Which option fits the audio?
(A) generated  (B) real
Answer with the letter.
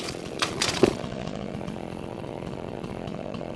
A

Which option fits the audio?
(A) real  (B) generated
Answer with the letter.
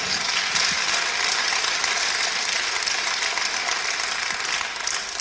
A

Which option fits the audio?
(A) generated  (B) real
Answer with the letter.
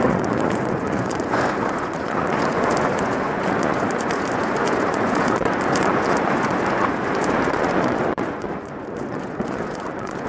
A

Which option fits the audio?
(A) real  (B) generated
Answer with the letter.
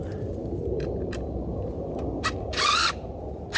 A